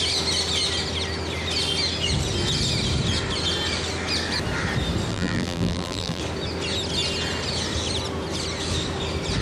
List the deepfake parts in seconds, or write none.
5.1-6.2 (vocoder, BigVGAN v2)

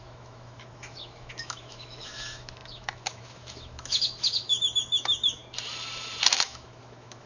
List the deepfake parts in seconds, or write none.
0.0-5.4 (autoencoder, DAC-VAE); 6.3-7.3

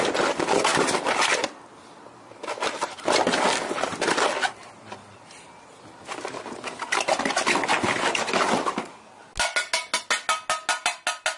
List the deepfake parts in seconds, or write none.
0.7-4.7 (vocoder, BigVGAN v2)

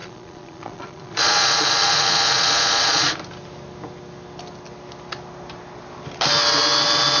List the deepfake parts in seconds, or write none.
0.0-3.1 (vocoder, Vocos)

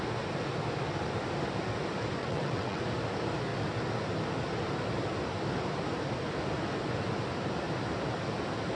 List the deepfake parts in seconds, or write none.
2.2-2.8 (vocoder, WaveNeXt)

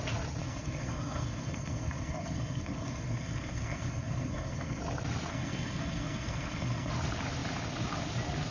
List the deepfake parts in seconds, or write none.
0.4-4.8 (codec, SNAC); 5.3-6.9

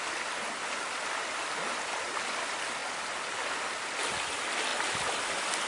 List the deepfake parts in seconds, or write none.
none